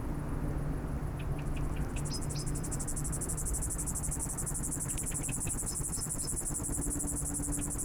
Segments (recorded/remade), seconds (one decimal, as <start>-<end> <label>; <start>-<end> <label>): 0.0-7.8 recorded